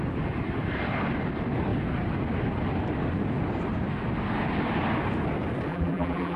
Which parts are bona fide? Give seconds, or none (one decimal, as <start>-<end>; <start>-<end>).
0.0-5.7